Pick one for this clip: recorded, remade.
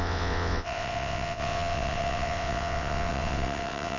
remade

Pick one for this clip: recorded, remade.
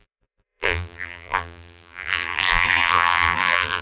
remade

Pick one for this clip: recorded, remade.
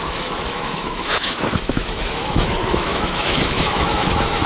remade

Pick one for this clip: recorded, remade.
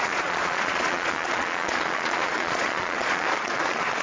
remade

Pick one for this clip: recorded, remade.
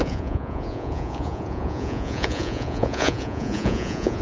remade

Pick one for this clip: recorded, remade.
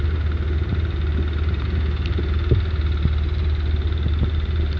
recorded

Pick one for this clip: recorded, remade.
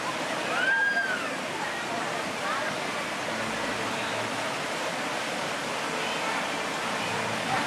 recorded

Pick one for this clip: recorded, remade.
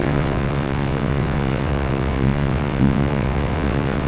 remade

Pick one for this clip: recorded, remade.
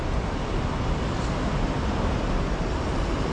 recorded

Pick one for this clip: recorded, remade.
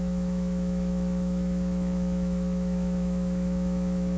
remade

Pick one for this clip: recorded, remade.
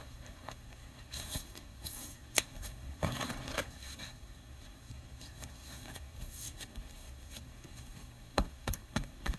remade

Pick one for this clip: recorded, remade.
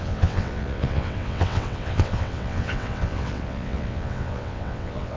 remade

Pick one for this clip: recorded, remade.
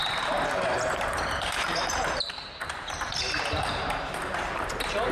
remade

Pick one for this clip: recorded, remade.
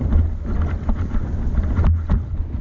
recorded